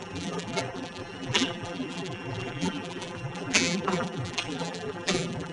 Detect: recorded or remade remade